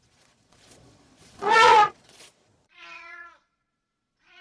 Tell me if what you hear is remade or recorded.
remade